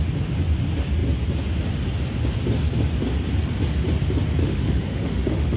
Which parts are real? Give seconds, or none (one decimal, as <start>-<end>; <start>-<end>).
0.0-4.4